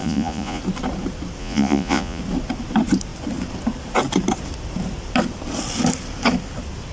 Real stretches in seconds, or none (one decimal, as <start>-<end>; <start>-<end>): 0.6-1.4; 2.2-6.9